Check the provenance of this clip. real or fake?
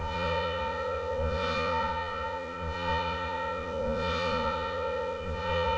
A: fake